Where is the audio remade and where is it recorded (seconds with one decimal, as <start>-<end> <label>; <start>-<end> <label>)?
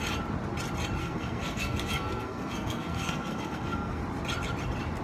0.0-1.0 recorded; 1.0-4.0 remade; 4.0-5.0 recorded